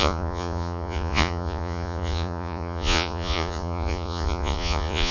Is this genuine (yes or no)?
no